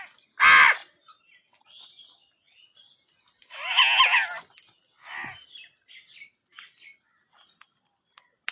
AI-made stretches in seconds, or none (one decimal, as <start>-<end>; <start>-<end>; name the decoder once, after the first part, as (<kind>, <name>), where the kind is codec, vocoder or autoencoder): none

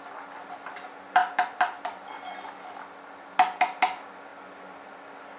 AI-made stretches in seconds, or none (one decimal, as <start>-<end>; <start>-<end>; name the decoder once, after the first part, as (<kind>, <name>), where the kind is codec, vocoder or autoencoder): none

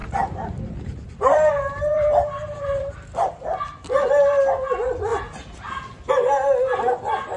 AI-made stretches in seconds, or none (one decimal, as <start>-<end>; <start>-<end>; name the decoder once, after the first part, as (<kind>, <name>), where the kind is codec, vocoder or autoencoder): 0.0-1.5 (vocoder, BigVGAN v2); 1.9-3.4

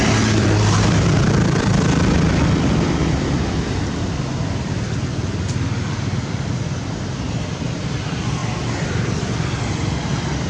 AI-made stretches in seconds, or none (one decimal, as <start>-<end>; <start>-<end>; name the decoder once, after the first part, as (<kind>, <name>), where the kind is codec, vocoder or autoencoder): 0.0-3.0 (vocoder, BigVGAN v2); 6.0-10.5

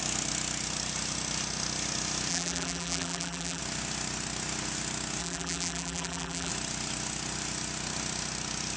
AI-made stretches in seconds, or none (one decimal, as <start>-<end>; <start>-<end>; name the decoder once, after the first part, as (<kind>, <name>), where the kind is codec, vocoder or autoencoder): 2.3-3.6 (vocoder, BigVGAN v2); 5.2-6.5

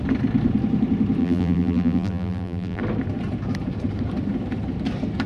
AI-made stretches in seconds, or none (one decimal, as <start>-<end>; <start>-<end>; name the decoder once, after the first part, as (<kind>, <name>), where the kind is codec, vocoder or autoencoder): 1.2-2.8 (vocoder, BigVGAN v2)